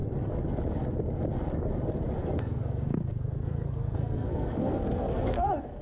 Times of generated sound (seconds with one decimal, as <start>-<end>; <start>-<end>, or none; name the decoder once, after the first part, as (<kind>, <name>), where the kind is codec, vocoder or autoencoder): 2.4-5.8 (codec, SNAC)